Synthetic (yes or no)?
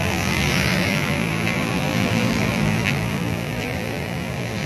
yes